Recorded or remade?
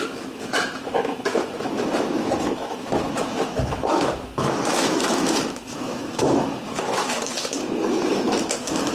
remade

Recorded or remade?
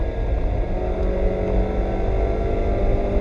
recorded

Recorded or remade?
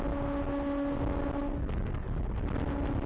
recorded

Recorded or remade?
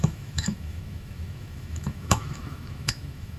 remade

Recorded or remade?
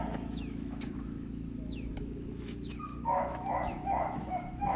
remade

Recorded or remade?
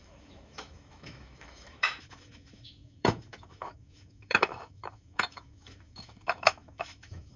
remade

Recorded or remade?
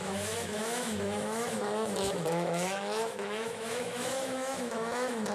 remade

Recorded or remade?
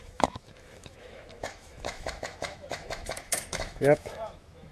remade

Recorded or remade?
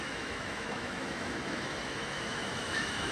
remade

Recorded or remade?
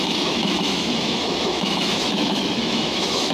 remade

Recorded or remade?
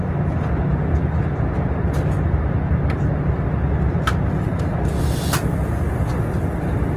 recorded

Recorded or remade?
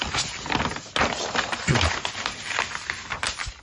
recorded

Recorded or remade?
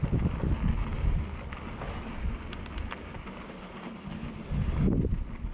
recorded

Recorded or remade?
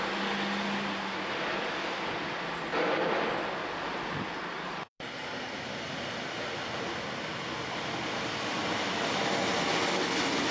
recorded